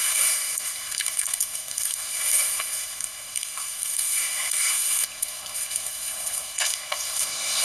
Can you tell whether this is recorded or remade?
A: remade